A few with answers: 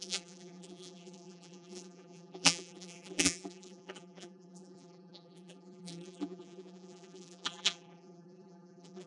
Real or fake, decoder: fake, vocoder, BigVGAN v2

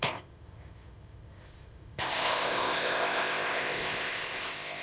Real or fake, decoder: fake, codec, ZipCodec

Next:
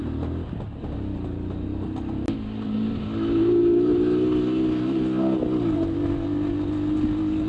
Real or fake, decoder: real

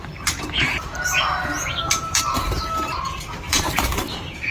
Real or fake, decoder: fake, vocoder, BigVGAN v2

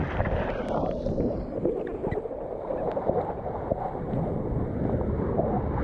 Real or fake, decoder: real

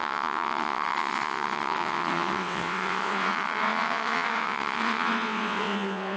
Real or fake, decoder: fake, vocoder, WaveNeXt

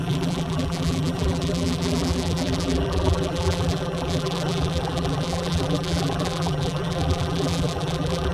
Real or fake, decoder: fake, vocoder, BigVGAN v2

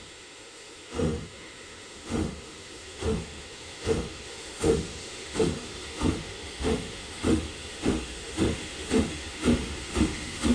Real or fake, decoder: fake, autoencoder, DAC-VAE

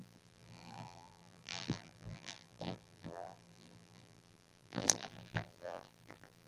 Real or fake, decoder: fake, vocoder, BigVGAN v2